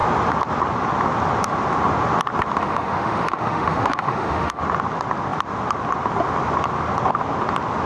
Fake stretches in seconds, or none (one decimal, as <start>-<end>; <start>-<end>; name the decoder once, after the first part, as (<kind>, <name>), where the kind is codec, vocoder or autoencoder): 2.6-4.6 (autoencoder, DAC-VAE)

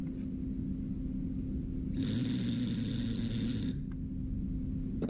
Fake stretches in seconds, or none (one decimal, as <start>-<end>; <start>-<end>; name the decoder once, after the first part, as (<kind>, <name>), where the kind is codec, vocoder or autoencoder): none